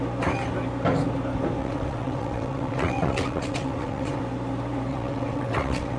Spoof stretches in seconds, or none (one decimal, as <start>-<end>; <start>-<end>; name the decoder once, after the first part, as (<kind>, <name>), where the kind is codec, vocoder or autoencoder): 1.6-4.2 (vocoder, WaveNeXt); 4.9-6.0